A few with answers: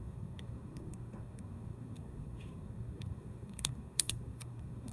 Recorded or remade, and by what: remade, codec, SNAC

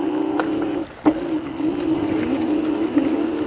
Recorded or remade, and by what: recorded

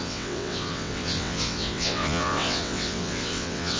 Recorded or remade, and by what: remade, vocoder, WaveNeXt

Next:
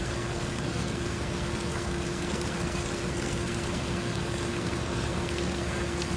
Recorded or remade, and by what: remade, codec, SNAC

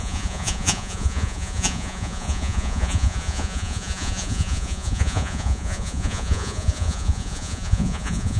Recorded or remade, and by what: remade, vocoder, Vocos